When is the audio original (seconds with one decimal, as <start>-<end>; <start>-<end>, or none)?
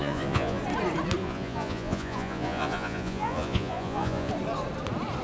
0.6-1.2; 4.3-5.2